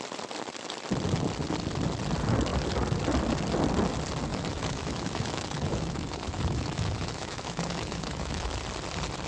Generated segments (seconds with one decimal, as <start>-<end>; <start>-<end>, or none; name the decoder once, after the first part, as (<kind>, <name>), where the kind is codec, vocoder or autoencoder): 4.3-8.6 (autoencoder, DAC-VAE)